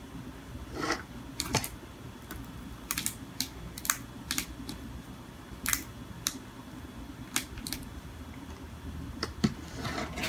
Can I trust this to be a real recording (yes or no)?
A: yes